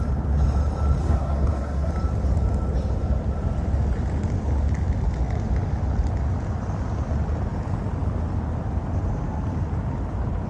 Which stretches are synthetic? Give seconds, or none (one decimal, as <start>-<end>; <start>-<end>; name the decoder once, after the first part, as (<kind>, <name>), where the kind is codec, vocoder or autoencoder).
1.0-1.9 (codec, SNAC)